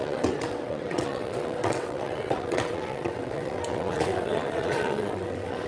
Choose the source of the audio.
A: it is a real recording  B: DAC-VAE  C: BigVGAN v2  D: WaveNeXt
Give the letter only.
D